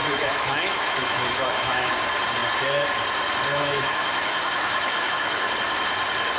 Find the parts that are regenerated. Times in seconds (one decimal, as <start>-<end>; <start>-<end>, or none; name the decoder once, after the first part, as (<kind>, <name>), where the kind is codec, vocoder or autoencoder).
0.0-1.9 (autoencoder, DAC-VAE); 3.5-5.5